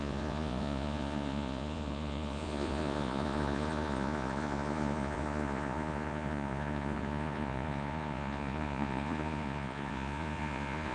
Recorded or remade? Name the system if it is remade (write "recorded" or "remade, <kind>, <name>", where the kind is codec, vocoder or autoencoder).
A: remade, vocoder, Vocos